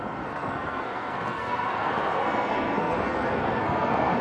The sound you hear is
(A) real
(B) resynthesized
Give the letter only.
B